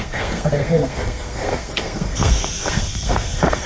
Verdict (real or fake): fake